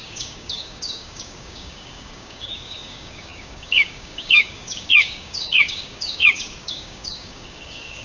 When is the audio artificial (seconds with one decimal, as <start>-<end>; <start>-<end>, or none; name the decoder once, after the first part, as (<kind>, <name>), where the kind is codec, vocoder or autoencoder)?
0.0-8.0 (codec, DAC)

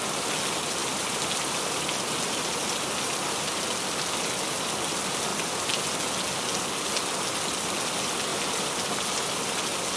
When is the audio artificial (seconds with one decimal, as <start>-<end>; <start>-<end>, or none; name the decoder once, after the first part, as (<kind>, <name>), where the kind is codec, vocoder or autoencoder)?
0.8-3.7 (vocoder, BigVGAN v2); 8.3-9.5